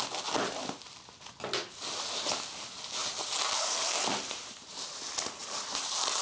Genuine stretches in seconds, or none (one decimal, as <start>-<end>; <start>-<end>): 0.0-3.0; 5.0-5.4